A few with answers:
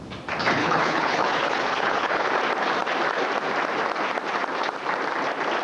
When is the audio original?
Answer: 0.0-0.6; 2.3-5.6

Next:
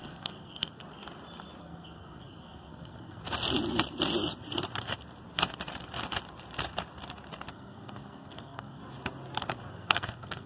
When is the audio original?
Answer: 0.8-1.6; 3.2-7.5; 8.8-9.7

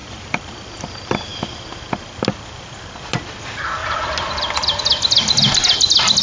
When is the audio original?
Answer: 0.7-3.8; 4.8-6.2

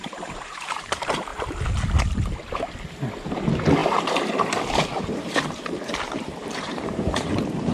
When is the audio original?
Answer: 1.3-2.9

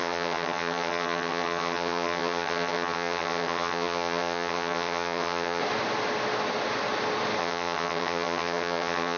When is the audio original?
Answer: 5.6-7.4

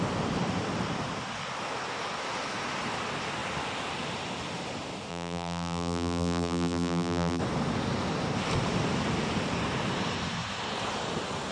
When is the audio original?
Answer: 0.0-5.1; 7.4-11.5

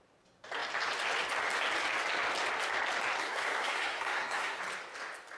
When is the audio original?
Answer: 0.0-3.2; 4.6-5.4

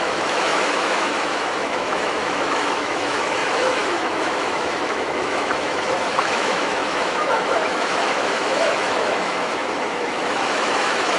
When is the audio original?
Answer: none